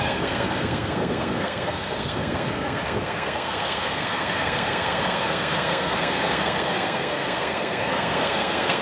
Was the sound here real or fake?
fake